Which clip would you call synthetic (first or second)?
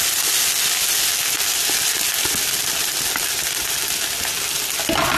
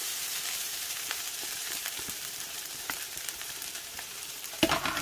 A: second